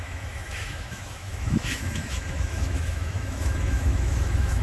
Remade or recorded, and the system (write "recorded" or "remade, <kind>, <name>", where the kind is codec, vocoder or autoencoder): remade, autoencoder, DAC-VAE